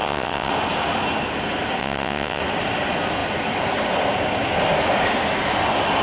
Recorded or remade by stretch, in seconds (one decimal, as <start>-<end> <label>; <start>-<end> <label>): 0.0-0.5 remade; 0.5-1.8 recorded; 1.8-2.4 remade; 2.4-6.0 recorded